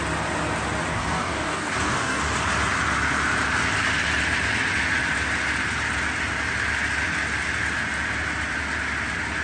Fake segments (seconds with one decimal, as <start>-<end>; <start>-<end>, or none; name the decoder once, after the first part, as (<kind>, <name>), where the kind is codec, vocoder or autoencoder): 0.9-2.2 (codec, DAC)